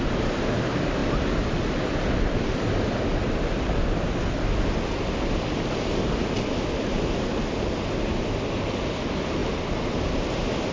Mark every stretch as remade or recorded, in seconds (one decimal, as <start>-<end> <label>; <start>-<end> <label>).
0.0-10.7 recorded